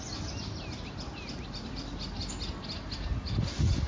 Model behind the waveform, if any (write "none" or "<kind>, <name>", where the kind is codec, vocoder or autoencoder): none